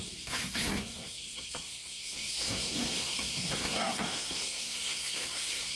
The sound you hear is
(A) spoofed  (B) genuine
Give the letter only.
A